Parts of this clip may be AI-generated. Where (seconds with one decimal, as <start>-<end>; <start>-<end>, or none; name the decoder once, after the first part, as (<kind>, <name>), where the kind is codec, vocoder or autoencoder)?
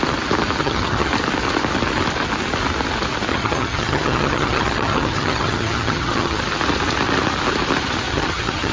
0.6-1.1 (vocoder, HiFi-GAN); 3.3-6.4; 8.1-8.7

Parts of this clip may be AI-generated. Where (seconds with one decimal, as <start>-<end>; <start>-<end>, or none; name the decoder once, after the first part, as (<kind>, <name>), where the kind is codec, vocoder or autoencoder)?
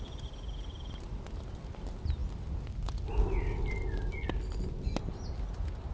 none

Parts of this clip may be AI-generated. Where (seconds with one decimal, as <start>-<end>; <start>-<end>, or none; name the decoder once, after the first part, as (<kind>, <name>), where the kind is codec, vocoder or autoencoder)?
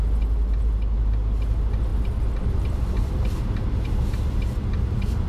none